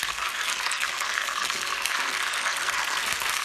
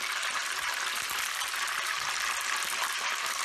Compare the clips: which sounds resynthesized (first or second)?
first